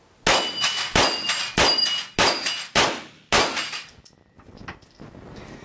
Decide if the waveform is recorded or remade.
recorded